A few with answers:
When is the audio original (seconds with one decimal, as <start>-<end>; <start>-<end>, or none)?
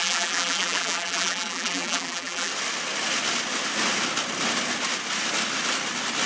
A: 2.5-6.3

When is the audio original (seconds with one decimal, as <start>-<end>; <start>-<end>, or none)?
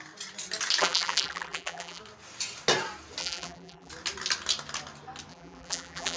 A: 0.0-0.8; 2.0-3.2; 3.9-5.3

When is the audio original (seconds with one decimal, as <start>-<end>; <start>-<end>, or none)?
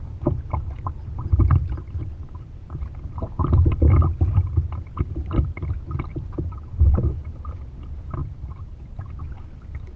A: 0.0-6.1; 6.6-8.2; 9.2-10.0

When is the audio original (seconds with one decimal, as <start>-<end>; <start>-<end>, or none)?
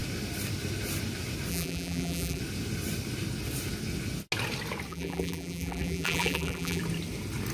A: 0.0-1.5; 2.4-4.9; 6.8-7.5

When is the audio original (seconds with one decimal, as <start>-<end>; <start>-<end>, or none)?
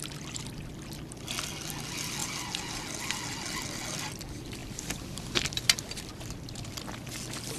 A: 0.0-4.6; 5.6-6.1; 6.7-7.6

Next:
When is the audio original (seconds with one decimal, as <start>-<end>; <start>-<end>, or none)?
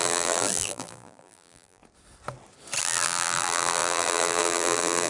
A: 1.8-2.8